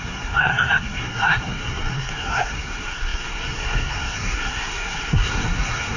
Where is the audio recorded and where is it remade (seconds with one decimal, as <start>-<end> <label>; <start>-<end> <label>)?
0.0-6.0 remade